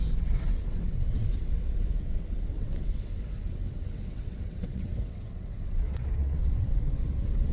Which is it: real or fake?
fake